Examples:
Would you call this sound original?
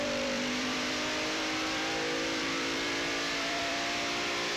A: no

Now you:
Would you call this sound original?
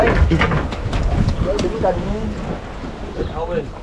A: yes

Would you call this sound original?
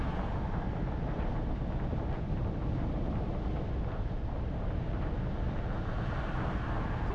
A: yes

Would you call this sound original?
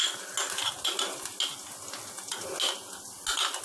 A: yes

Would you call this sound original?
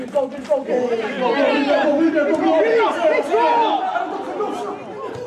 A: yes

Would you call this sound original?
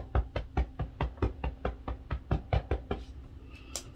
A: yes